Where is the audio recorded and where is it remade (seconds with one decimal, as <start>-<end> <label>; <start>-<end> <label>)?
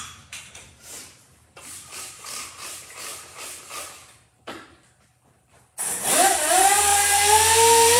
0.0-3.1 remade; 3.1-5.9 recorded; 5.9-8.0 remade